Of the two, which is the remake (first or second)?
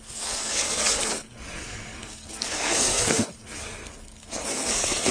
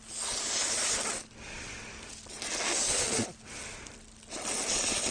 first